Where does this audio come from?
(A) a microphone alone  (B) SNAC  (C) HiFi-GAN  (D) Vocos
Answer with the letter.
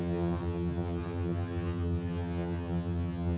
C